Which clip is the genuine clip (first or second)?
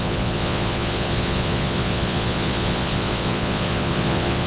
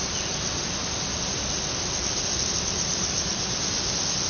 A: second